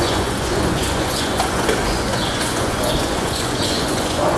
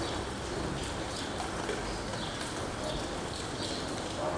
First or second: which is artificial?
first